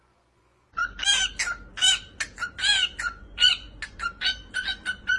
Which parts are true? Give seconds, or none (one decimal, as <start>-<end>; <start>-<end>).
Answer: 0.8-3.0